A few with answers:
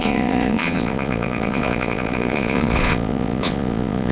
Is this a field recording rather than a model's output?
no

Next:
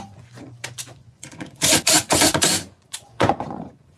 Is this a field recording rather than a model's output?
no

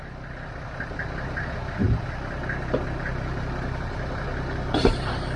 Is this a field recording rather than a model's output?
yes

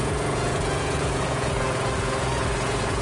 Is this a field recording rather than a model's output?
no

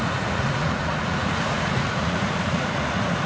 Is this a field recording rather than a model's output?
no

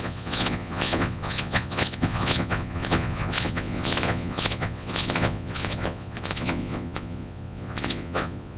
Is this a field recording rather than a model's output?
no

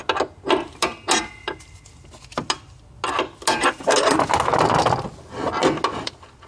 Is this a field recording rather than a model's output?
yes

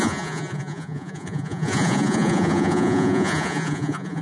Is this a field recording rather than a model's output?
no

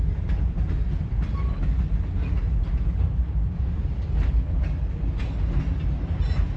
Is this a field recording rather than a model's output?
yes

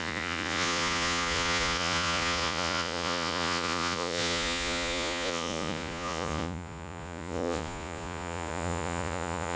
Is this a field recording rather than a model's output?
no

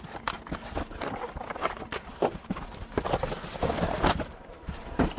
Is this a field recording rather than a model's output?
yes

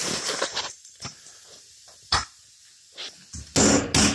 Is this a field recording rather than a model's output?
yes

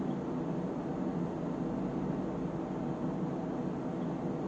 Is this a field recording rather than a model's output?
yes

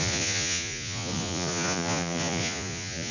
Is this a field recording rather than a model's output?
no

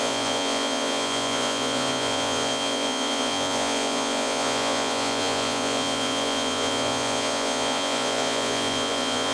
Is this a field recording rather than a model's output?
no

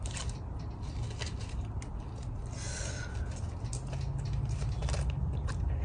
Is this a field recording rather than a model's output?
yes